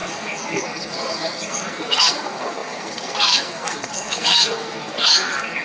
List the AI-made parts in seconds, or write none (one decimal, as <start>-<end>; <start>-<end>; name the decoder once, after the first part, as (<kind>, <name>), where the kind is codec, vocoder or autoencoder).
0.0-5.6 (codec, SNAC)